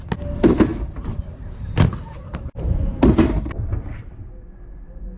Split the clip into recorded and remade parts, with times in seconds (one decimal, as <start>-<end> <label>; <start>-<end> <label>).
0.0-5.2 recorded

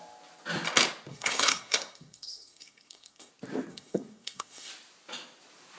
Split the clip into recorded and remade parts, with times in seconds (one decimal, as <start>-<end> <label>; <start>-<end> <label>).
0.0-1.1 recorded; 1.1-3.3 remade; 3.3-3.7 recorded; 3.7-4.7 remade; 4.7-5.8 recorded

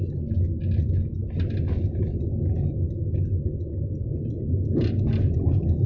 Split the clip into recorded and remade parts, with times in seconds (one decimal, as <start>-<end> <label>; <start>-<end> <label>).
0.0-5.9 recorded

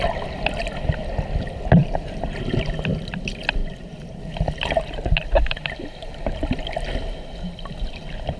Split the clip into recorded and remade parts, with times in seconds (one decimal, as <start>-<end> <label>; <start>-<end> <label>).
0.0-1.8 recorded; 1.8-2.6 remade; 2.6-3.6 recorded; 3.6-4.2 remade; 4.2-8.4 recorded

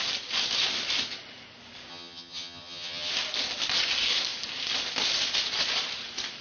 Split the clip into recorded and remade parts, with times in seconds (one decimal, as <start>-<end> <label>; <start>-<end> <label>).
0.0-1.9 recorded; 1.9-3.1 remade; 3.1-6.4 recorded

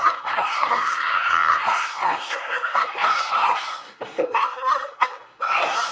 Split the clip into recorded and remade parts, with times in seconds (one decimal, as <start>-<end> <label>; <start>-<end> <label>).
0.0-5.9 remade

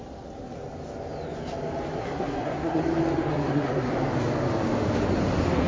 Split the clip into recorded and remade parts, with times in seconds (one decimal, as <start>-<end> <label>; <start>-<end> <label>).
0.0-2.0 recorded; 2.0-2.8 remade; 2.8-3.3 recorded; 3.3-3.9 remade; 3.9-5.7 recorded

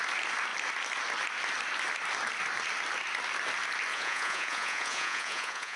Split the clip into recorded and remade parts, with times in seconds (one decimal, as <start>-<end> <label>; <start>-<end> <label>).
0.0-3.9 recorded; 3.9-5.8 remade